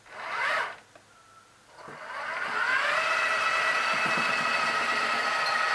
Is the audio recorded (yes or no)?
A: yes